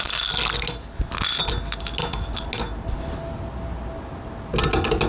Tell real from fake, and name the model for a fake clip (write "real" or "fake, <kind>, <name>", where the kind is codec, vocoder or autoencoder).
real